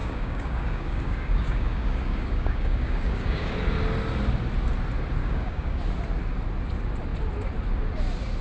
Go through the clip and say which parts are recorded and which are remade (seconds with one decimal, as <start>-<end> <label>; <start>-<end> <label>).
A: 0.0-3.5 remade; 3.5-5.2 recorded; 5.2-5.8 remade; 5.8-8.4 recorded